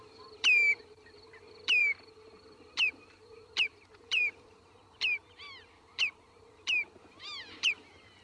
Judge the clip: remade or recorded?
remade